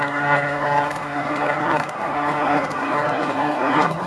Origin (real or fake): fake